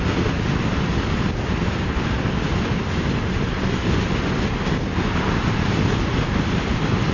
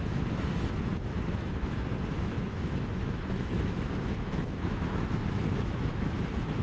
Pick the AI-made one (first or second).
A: second